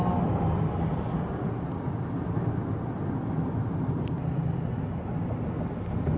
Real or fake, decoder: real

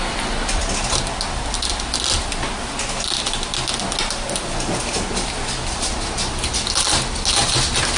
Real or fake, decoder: real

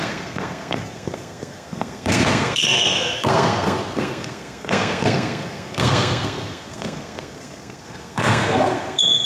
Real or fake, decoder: fake, codec, SNAC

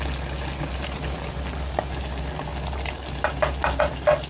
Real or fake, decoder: real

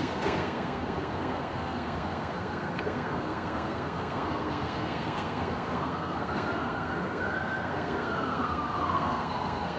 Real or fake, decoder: fake, codec, SNAC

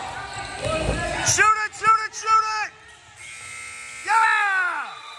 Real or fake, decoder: real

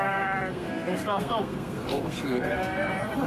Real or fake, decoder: fake, codec, SNAC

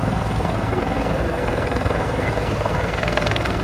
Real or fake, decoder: fake, codec, SNAC